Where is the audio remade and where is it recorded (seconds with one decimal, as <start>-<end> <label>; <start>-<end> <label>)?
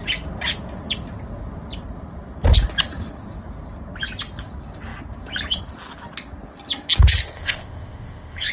0.0-7.3 recorded; 7.3-8.5 remade